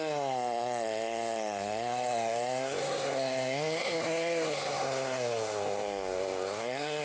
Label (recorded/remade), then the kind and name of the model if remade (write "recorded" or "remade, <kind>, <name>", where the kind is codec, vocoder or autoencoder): remade, codec, SNAC